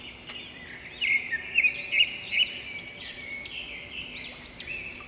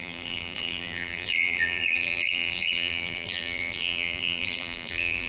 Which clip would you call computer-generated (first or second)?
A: second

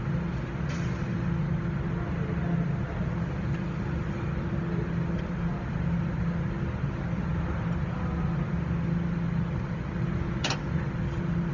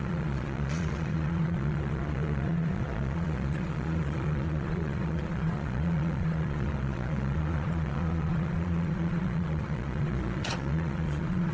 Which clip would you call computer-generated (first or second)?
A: second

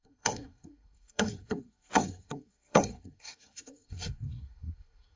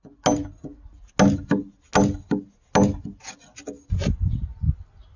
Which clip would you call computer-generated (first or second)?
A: first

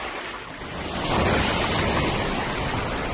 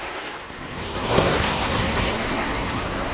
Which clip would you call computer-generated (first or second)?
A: second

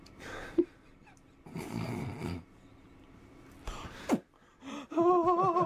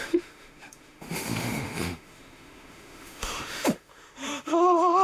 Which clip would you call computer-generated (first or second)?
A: second